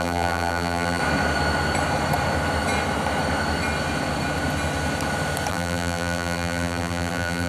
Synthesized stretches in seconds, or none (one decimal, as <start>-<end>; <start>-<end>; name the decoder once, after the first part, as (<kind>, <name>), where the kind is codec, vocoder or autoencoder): 0.0-1.0 (vocoder, BigVGAN v2); 5.5-7.5